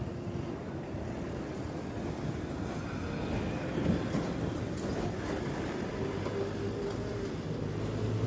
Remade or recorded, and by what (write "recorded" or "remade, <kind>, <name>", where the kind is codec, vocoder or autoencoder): recorded